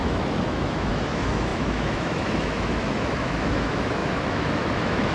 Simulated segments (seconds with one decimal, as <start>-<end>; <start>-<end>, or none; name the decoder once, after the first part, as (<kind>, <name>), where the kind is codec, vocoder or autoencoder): 0.0-5.1 (autoencoder, DAC-VAE)